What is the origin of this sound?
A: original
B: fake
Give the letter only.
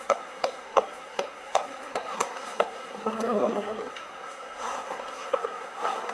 B